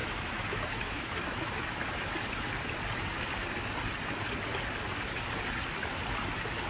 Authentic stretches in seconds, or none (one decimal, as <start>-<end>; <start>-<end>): 1.9-6.7